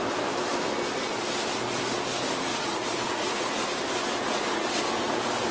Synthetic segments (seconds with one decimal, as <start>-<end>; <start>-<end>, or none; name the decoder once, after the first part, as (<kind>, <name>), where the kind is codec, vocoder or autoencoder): 2.5-3.5 (vocoder, Vocos)